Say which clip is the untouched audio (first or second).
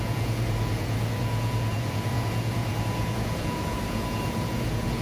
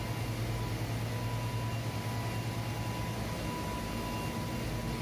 second